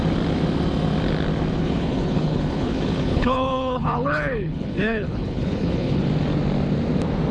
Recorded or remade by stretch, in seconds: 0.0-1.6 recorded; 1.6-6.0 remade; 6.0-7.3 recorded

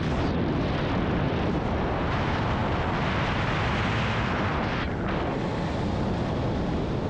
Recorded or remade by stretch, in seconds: 0.0-7.1 recorded

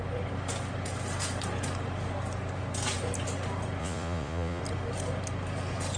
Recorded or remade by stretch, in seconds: 0.0-3.8 recorded; 3.8-4.6 remade; 4.6-6.0 recorded

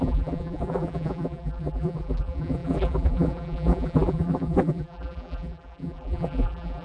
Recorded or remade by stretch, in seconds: 0.0-6.8 remade